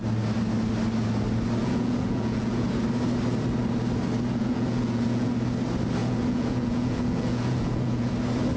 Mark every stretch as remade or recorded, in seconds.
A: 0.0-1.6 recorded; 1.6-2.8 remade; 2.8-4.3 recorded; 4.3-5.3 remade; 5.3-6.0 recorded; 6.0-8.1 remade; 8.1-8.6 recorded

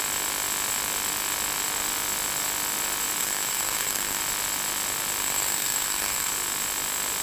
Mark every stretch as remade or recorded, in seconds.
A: 0.0-3.2 recorded; 3.2-4.2 remade; 4.2-5.2 recorded; 5.2-6.3 remade; 6.3-7.2 recorded

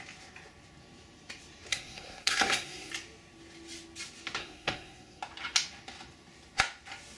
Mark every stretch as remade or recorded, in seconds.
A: 0.0-1.7 recorded; 1.7-2.9 remade; 2.9-4.4 recorded; 4.4-5.2 remade; 5.2-7.2 recorded

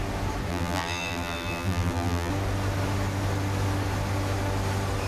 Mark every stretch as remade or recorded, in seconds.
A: 0.0-0.5 recorded; 0.5-2.3 remade; 2.3-5.1 recorded

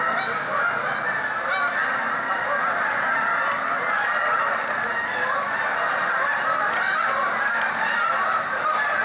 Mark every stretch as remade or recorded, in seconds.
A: 0.0-9.0 recorded